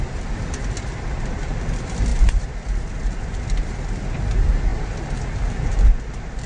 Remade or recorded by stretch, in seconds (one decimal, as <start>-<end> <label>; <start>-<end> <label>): 0.0-4.7 remade; 4.7-6.0 recorded; 6.0-6.5 remade